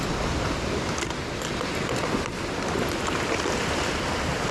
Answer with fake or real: real